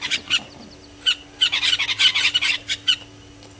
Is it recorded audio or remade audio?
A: recorded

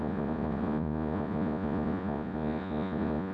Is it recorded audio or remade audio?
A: remade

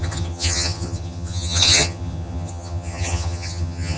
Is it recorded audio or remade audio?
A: remade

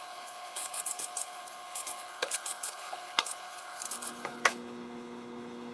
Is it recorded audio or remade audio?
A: remade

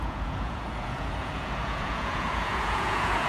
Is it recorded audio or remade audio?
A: remade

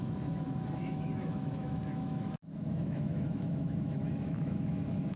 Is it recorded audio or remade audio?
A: remade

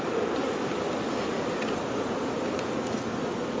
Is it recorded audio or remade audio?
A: recorded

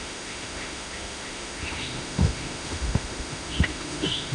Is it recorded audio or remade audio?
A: remade